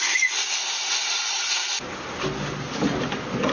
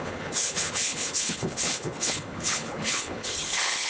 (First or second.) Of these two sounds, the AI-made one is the second